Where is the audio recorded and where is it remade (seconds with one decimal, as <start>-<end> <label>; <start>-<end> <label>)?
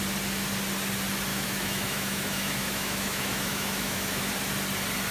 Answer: 0.0-1.3 recorded; 1.3-4.3 remade; 4.3-5.1 recorded